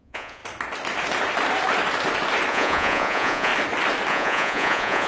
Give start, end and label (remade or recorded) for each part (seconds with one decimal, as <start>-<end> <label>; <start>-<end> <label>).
0.0-0.4 remade; 0.4-2.5 recorded; 2.5-3.5 remade; 3.5-4.1 recorded; 4.1-5.1 remade